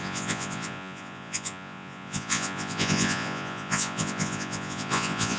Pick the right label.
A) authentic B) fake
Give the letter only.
B